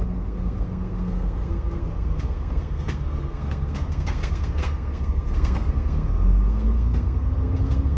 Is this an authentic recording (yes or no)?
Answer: no